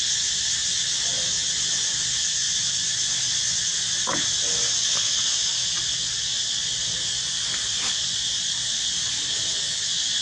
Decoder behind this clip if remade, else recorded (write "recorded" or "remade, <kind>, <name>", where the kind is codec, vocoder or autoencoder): recorded